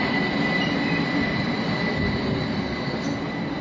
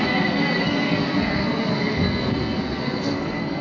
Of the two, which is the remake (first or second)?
second